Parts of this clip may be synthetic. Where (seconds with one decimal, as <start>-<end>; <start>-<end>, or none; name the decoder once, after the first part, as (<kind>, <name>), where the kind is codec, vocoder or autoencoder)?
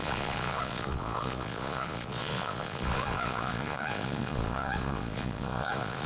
0.0-6.1 (vocoder, Vocos)